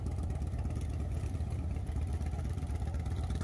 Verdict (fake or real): real